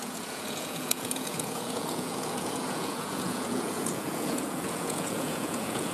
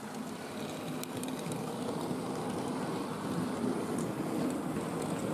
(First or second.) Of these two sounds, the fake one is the first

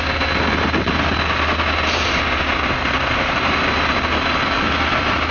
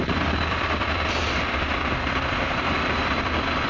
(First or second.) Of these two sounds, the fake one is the second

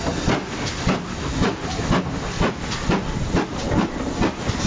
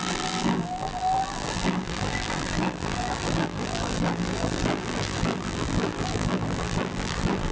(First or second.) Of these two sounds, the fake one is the second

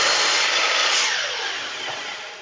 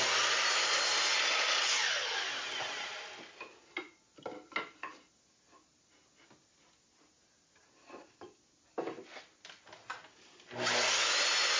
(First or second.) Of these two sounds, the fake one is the first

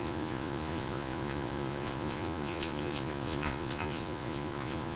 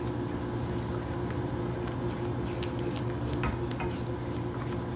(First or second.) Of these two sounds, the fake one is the first